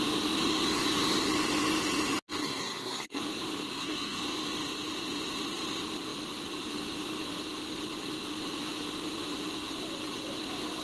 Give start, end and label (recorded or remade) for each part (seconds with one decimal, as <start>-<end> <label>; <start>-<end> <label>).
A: 0.0-2.4 recorded; 2.4-3.2 remade; 3.2-3.7 recorded; 3.7-4.2 remade; 4.2-10.8 recorded